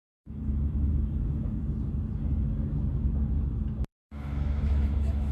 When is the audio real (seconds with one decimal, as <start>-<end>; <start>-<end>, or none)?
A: 1.4-3.9